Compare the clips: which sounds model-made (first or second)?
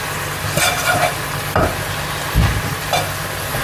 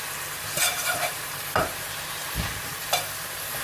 second